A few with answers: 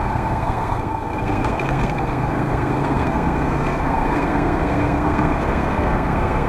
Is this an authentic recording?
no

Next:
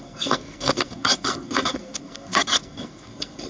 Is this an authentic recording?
no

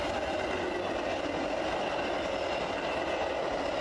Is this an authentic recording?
yes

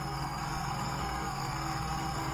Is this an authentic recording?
no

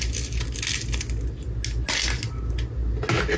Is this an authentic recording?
yes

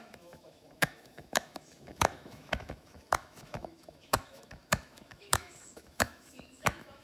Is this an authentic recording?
no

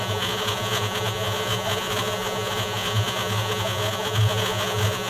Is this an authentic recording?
no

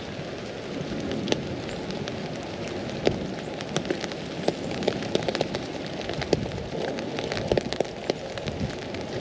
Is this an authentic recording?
yes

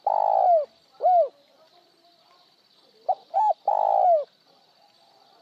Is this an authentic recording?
yes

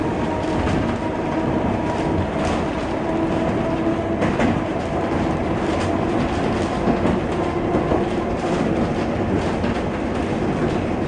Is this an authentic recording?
yes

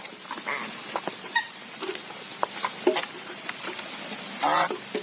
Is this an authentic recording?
yes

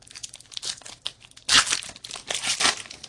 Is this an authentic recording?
yes